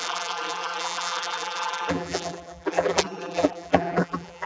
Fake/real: fake